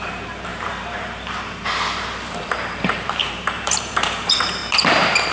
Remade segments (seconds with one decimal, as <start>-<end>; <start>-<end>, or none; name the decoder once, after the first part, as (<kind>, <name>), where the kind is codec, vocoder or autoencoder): 0.0-4.6 (vocoder, BigVGAN v2)